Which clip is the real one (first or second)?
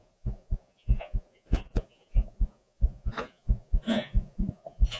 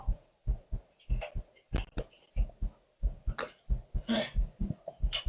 second